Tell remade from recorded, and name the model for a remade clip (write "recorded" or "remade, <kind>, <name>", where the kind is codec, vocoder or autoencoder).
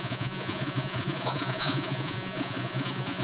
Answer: remade, vocoder, Vocos